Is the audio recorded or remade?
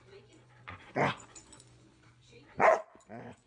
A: remade